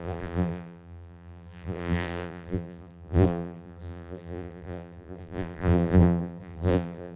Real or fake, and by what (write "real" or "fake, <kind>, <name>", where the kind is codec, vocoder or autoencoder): fake, vocoder, BigVGAN v2